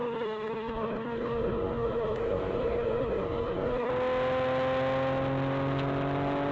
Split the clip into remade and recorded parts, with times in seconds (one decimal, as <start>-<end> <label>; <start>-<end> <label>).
0.0-3.9 remade; 3.9-6.5 recorded